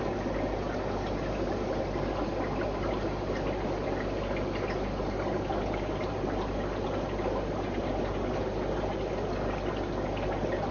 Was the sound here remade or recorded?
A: recorded